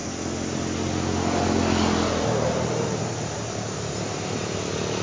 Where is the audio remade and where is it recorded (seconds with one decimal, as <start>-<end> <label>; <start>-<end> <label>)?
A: 0.0-5.0 recorded